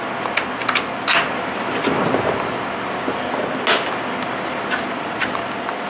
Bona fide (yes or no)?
yes